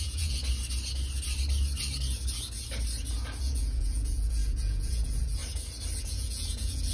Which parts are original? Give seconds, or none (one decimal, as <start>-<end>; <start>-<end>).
0.4-3.4; 5.4-6.0

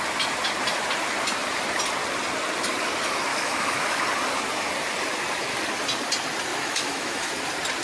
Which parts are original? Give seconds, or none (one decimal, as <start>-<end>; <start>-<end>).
0.0-3.3; 4.0-6.5; 7.3-7.8

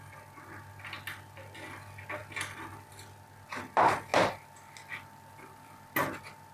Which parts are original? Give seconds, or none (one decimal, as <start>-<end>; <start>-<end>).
0.0-6.5

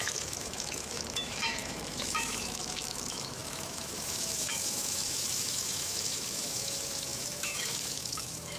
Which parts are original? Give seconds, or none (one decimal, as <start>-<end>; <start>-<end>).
none

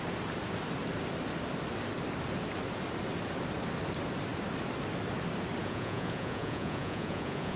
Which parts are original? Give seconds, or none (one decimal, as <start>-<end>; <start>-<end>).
0.0-5.6

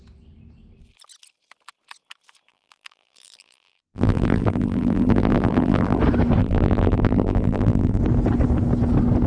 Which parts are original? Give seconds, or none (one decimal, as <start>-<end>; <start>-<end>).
0.0-2.5; 6.0-6.4; 8.0-9.3

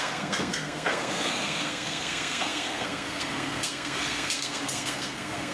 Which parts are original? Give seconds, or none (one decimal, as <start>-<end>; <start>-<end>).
none

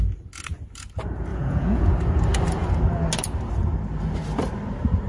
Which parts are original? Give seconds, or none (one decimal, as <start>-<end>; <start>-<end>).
0.0-1.3; 1.9-5.1